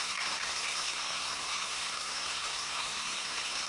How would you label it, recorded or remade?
remade